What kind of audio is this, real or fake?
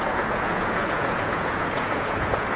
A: fake